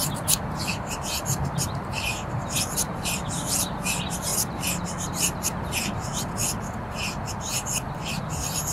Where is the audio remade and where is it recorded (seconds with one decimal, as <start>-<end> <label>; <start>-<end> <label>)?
0.0-4.3 remade; 4.3-8.2 recorded; 8.2-8.7 remade